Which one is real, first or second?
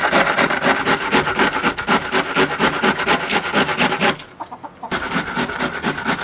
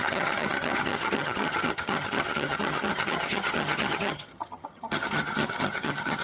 first